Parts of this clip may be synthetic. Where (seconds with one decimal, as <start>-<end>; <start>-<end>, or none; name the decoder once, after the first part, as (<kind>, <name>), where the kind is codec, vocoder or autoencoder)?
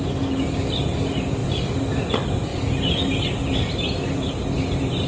none